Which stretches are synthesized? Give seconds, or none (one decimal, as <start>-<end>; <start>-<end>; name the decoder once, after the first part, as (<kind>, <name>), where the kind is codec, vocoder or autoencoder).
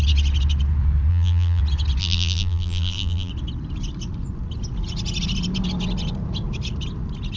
1.1-1.6 (vocoder, BigVGAN v2); 2.0-3.3